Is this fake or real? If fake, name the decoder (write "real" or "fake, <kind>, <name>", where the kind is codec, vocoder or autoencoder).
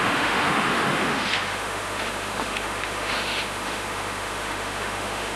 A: fake, autoencoder, DAC-VAE